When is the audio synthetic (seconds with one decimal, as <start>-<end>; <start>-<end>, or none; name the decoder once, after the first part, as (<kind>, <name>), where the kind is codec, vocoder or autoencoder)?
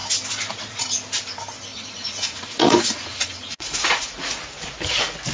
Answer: 1.7-4.4 (vocoder, Vocos)